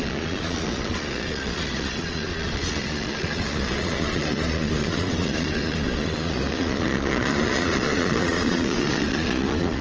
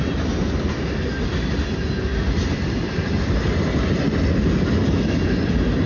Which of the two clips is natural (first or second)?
second